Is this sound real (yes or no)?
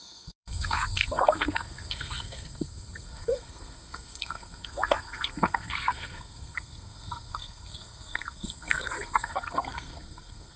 no